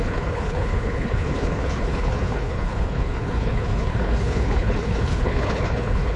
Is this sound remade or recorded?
remade